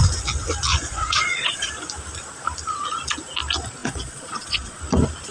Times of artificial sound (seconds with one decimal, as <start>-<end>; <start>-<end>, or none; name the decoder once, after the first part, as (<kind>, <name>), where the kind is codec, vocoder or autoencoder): 0.7-1.7 (vocoder, Vocos); 3.8-4.8